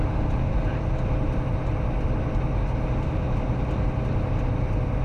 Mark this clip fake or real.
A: real